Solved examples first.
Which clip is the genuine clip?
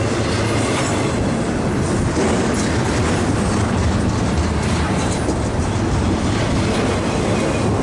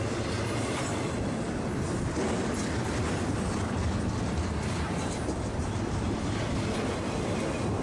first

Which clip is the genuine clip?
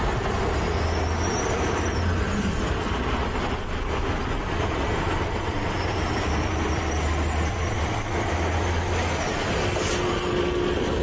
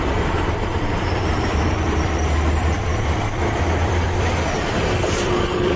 first